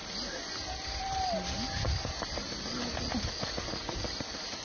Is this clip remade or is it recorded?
recorded